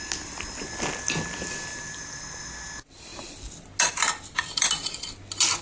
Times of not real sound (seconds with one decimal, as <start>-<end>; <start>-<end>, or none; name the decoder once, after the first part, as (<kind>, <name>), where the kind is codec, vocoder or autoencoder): 1.7-2.5 (vocoder, BigVGAN v2)